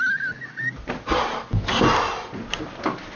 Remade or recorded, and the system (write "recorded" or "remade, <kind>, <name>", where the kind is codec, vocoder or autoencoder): recorded